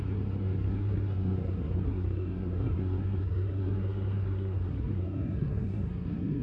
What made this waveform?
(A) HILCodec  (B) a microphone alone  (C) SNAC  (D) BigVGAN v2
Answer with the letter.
C